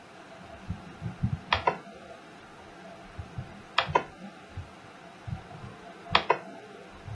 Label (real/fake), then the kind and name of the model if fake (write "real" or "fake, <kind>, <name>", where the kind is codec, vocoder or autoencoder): real